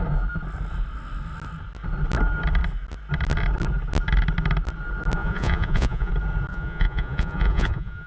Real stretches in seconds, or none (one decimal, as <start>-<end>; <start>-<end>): 0.0-5.2; 6.1-6.5